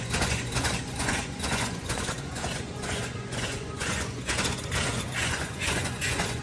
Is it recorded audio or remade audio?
remade